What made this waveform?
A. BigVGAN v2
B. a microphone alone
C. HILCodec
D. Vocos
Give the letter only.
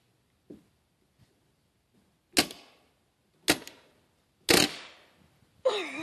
B